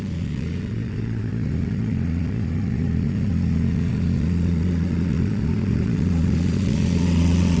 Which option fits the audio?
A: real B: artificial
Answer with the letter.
B